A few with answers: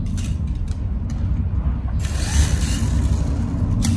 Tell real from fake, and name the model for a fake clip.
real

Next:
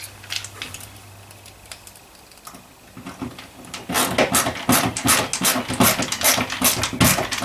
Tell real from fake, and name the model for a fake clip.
real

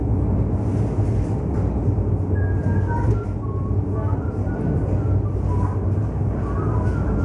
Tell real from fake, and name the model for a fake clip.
real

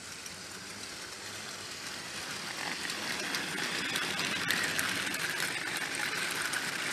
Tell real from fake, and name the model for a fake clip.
real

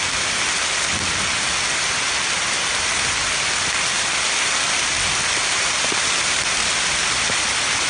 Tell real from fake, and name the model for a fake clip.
real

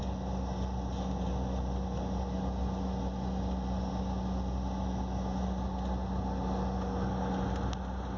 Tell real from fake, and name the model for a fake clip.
real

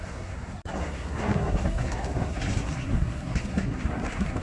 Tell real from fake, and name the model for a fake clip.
fake, codec, SNAC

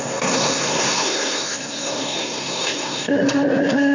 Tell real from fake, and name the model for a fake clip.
fake, codec, SNAC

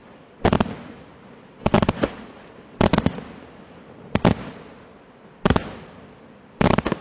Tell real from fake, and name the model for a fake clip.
real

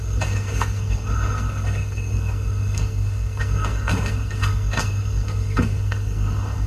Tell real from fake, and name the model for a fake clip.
fake, codec, SNAC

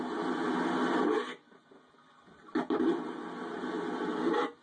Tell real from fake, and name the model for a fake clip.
real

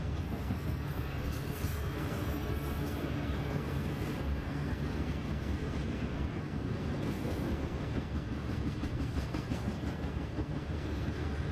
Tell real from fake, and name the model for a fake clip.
fake, codec, SNAC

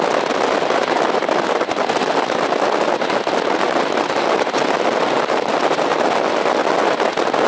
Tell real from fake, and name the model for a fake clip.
real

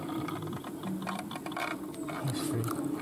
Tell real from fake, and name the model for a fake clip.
real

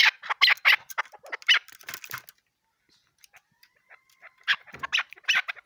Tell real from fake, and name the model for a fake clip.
real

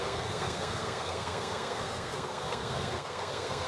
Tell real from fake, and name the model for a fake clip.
fake, codec, SNAC